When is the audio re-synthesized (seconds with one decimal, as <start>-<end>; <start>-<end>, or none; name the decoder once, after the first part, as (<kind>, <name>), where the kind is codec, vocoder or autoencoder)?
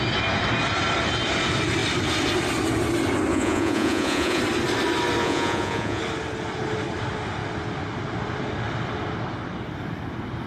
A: 3.3-4.4 (vocoder, Vocos); 5.2-6.0